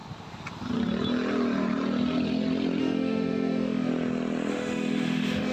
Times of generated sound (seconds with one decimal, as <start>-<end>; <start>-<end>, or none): 2.8-3.9; 4.5-5.5